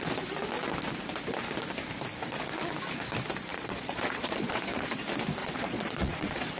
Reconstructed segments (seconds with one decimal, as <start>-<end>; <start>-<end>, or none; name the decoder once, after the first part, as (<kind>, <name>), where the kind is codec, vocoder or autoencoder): 3.5-4.9 (vocoder, Vocos); 5.4-6.6